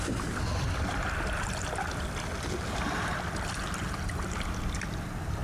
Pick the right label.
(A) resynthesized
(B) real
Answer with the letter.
B